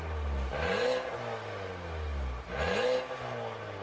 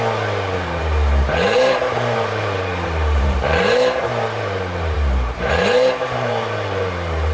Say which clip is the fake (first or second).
second